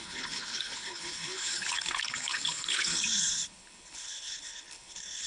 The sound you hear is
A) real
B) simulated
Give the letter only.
B